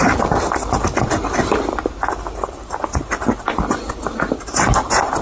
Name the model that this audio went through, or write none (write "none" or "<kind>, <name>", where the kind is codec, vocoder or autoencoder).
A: none